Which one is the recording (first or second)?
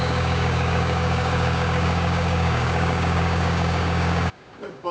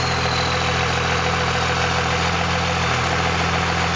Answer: second